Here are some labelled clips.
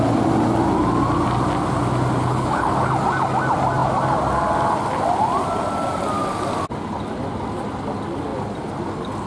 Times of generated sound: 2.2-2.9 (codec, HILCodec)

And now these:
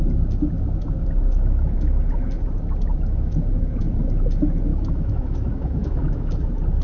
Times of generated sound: 4.7-6.3 (autoencoder, DAC-VAE)

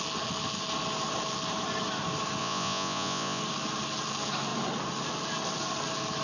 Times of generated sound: 2.4-3.4 (vocoder, Vocos)